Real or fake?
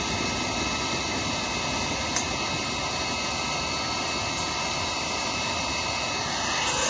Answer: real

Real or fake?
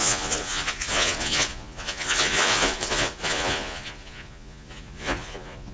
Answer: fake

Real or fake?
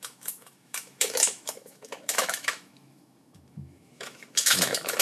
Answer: fake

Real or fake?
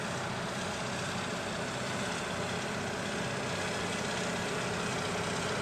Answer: real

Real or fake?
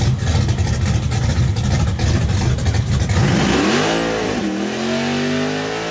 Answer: real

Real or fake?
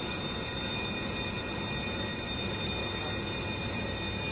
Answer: real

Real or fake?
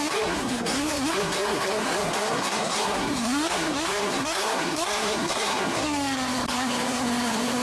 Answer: fake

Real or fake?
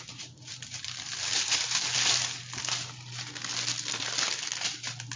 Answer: real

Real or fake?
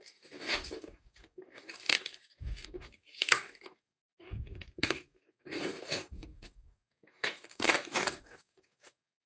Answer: fake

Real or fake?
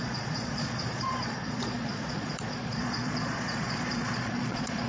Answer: fake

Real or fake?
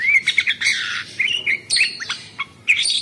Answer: fake